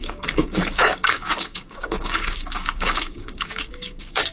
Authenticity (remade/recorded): remade